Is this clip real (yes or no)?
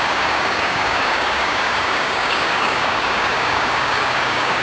no